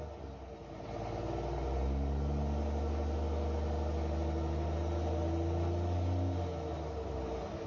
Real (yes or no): yes